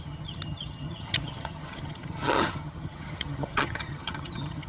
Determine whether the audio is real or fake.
fake